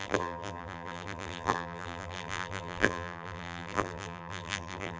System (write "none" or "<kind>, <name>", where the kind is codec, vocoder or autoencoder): vocoder, BigVGAN v2